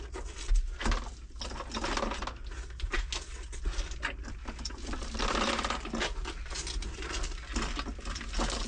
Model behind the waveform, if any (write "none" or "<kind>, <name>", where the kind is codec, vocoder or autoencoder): none